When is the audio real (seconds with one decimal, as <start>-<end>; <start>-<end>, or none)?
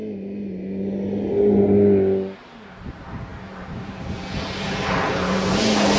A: 0.0-6.0